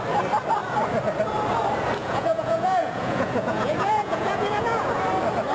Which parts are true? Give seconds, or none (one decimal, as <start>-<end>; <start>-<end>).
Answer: 0.0-2.0; 4.8-5.5